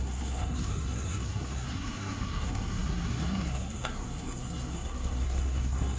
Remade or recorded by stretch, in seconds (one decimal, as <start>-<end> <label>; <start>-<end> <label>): 0.0-6.0 remade